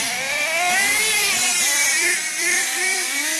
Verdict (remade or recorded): remade